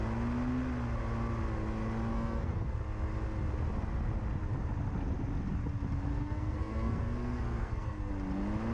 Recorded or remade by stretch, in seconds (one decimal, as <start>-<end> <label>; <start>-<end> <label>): 0.0-2.1 recorded; 2.1-2.8 remade; 2.8-6.1 recorded; 6.1-8.1 remade; 8.1-8.7 recorded